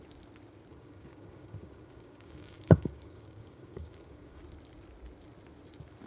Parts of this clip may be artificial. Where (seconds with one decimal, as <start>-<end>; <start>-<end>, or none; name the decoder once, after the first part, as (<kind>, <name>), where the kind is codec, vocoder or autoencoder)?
0.7-4.4 (codec, DAC)

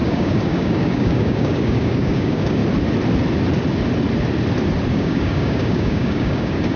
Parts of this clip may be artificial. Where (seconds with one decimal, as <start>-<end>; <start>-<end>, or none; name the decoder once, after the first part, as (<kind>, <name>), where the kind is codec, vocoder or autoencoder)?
0.0-2.6 (codec, DAC); 4.9-6.8

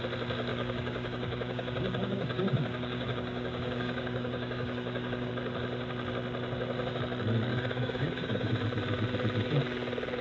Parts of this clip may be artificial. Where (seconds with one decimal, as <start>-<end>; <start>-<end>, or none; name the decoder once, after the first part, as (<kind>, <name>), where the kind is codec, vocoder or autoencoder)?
0.5-5.3 (codec, DAC); 7.5-8.5

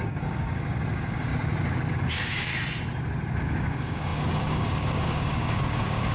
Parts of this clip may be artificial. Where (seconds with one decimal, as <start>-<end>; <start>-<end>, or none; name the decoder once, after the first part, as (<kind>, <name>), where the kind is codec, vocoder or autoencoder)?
0.0-1.3 (codec, DAC); 1.9-2.5; 3.4-6.1